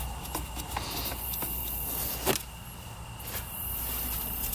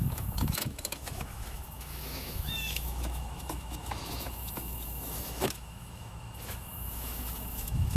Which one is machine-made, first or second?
second